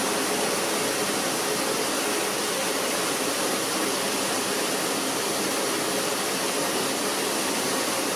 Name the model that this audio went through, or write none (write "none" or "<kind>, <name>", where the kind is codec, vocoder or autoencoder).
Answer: none